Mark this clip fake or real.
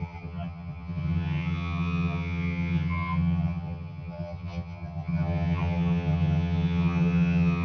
fake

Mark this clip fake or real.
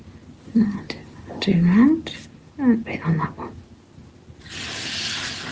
real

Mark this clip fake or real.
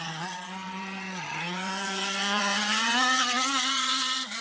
fake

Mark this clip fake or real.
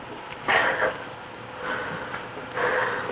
real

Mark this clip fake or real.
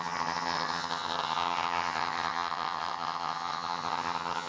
fake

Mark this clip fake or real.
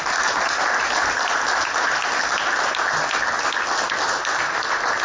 real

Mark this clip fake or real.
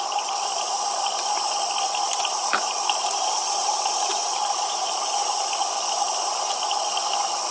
real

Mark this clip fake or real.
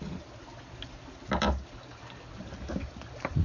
real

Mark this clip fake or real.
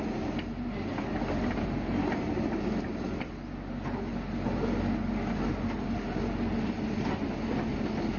real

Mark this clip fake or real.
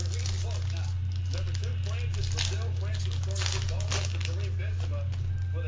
real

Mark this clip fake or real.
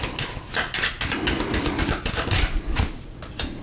real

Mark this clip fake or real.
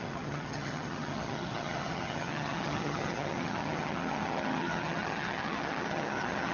fake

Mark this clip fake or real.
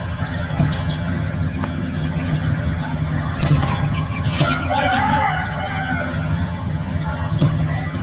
fake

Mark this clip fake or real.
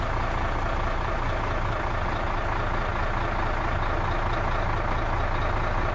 real